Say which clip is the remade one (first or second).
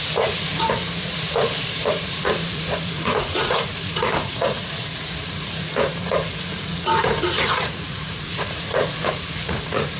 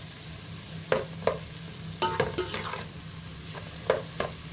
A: first